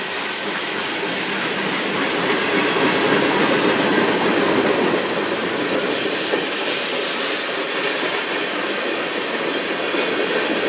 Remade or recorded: recorded